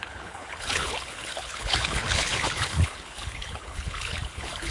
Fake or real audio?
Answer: fake